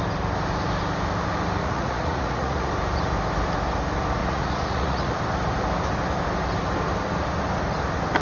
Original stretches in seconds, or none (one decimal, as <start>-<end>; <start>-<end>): 0.0-1.6; 2.7-4.2; 5.2-8.2